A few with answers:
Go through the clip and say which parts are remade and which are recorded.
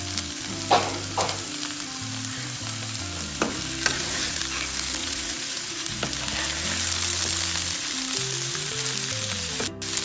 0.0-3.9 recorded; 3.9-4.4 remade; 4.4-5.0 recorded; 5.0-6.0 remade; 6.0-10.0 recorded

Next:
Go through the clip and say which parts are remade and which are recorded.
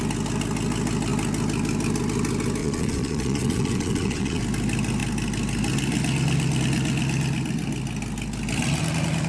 0.0-2.6 recorded; 2.6-4.4 remade; 4.4-9.3 recorded